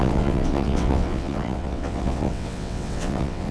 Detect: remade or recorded remade